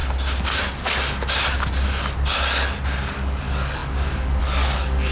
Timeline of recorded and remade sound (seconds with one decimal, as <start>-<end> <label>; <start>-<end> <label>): 0.0-3.1 recorded; 3.1-5.1 remade